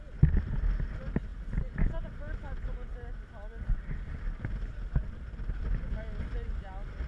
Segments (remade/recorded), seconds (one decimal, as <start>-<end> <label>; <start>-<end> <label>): 0.0-7.1 recorded